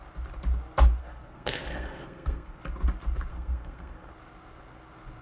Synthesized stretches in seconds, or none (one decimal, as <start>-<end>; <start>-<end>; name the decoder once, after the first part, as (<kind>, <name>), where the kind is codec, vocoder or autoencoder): 1.0-2.6 (codec, SNAC); 3.3-4.1